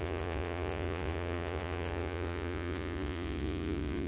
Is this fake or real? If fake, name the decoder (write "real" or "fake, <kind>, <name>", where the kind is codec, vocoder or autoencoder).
fake, vocoder, Vocos